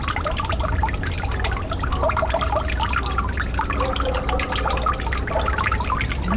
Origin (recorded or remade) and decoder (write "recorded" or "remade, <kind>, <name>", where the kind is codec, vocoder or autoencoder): recorded